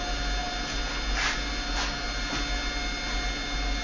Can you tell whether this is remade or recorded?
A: recorded